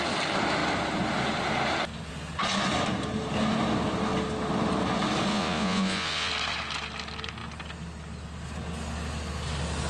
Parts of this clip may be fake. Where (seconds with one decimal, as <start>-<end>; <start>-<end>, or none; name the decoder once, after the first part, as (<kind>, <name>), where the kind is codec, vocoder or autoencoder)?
5.3-6.3 (vocoder, Vocos)

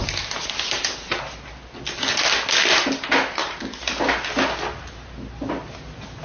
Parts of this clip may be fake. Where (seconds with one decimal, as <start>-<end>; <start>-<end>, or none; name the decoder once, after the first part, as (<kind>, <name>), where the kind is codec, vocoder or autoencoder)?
3.4-4.1 (vocoder, BigVGAN v2)